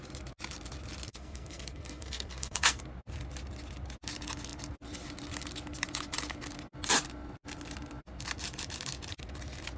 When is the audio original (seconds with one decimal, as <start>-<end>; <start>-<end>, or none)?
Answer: 0.0-1.1; 2.8-9.8